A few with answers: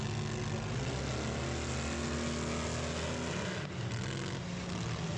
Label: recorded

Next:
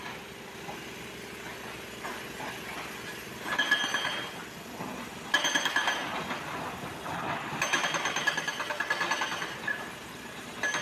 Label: recorded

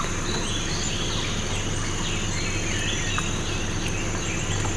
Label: recorded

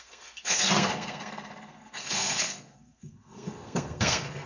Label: remade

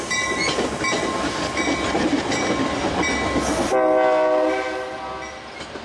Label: recorded